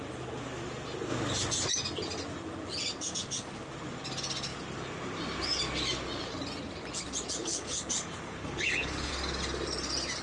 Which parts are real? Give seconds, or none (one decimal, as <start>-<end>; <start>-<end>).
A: 0.0-7.4; 9.1-10.2